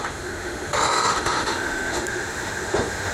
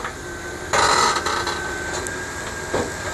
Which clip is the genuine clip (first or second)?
second